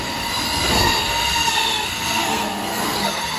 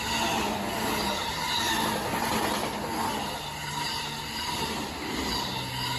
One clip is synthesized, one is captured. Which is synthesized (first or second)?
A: first